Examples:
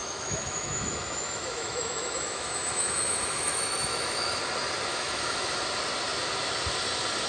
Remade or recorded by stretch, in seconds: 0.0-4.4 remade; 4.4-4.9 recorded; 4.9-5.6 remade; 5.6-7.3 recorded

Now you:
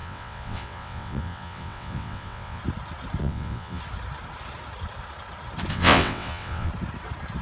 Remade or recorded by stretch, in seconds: 0.0-2.6 remade; 2.6-3.2 recorded; 3.2-3.8 remade; 3.8-5.7 recorded; 5.7-6.7 remade; 6.7-7.4 recorded